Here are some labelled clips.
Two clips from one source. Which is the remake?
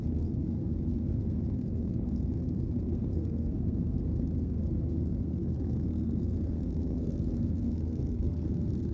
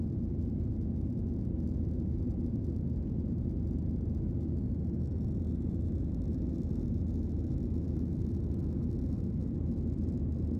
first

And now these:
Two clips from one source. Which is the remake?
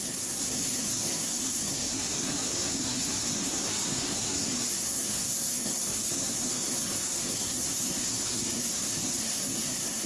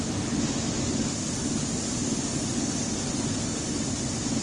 first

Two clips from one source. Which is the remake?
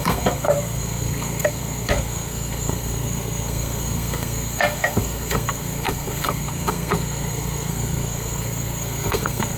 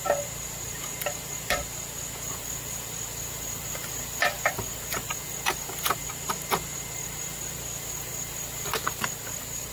first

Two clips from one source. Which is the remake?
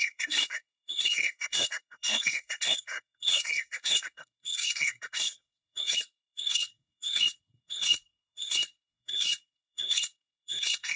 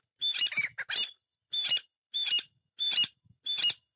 first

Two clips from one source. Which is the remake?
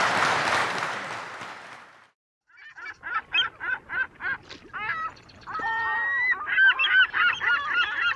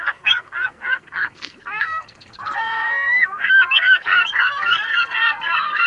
second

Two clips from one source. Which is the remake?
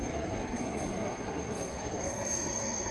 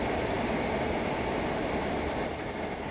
first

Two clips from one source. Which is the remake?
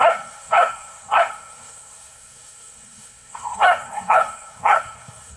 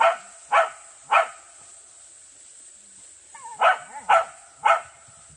first